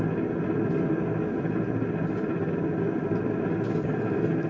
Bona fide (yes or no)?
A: yes